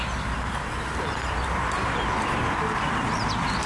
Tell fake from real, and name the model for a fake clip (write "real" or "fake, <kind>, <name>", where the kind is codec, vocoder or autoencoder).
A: real